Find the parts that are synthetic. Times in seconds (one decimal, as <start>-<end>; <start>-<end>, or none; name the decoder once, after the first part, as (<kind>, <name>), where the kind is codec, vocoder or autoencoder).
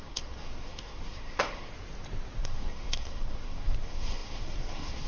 0.0-1.7 (codec, SNAC); 2.4-5.1